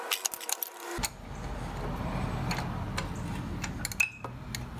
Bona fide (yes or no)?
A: yes